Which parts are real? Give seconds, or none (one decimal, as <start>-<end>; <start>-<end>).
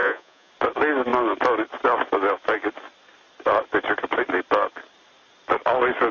0.5-6.1